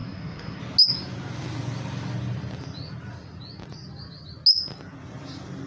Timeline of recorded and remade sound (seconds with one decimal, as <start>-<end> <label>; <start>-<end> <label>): 0.0-0.6 remade; 0.6-5.7 recorded